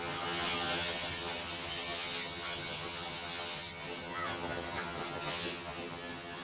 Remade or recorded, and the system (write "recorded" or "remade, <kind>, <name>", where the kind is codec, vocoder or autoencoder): remade, vocoder, HiFi-GAN